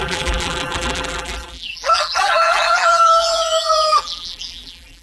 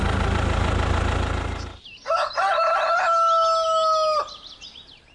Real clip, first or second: second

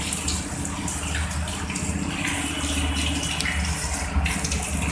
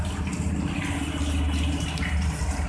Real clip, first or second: first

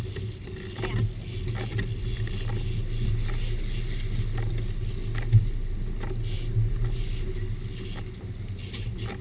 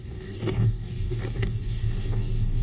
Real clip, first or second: first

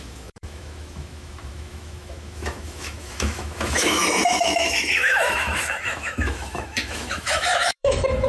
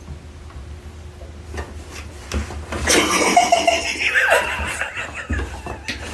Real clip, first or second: second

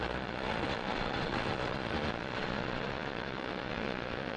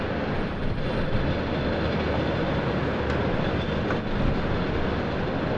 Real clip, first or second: second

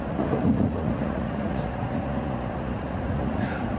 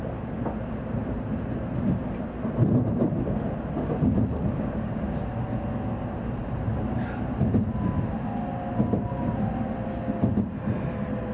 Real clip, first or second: second